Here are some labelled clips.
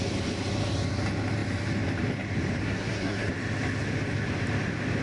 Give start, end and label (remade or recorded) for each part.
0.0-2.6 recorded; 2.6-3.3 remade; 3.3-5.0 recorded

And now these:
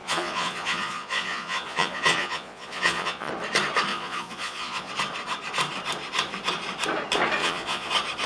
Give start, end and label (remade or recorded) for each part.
0.0-3.3 remade; 3.3-3.9 recorded; 3.9-4.9 remade; 4.9-7.4 recorded; 7.4-7.9 remade; 7.9-8.3 recorded

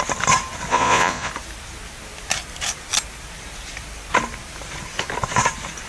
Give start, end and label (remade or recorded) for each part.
0.0-0.7 recorded; 0.7-1.3 remade; 1.3-5.9 recorded

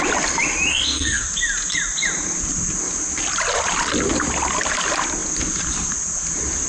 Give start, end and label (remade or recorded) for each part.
0.0-0.7 recorded; 0.7-1.2 remade; 1.2-6.7 recorded

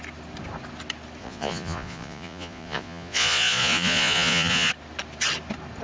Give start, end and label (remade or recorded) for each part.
0.0-1.2 recorded; 1.2-4.7 remade; 4.7-5.8 recorded